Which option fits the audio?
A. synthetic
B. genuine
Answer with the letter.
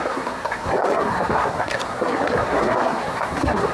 A